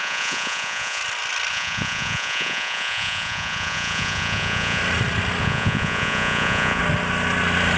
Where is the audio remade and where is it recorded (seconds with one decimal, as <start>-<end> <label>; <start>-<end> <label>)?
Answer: 0.0-1.0 remade; 1.0-1.5 recorded; 1.5-4.8 remade; 4.8-5.4 recorded; 5.4-6.8 remade; 6.8-7.8 recorded